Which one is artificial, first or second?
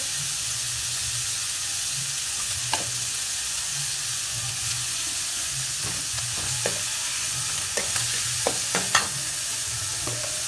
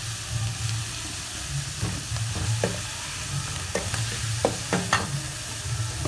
first